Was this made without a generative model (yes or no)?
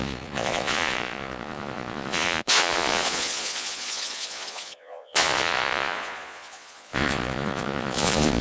no